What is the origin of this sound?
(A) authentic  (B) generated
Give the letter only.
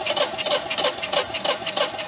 A